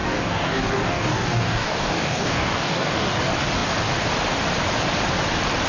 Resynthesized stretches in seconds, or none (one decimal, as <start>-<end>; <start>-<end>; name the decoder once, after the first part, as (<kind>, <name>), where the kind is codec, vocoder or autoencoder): 0.0-3.2 (codec, DAC)